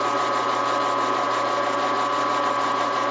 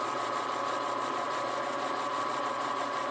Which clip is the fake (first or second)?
second